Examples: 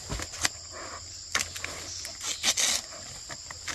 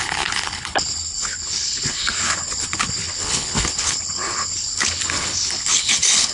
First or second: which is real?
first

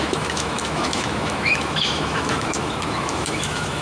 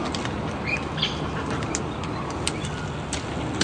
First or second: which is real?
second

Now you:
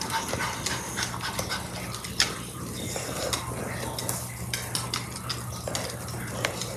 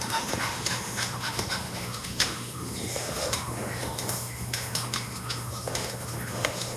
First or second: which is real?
first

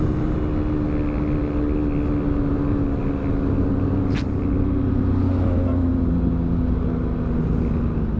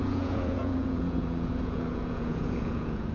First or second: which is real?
first